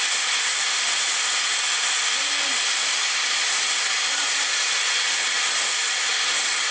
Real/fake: real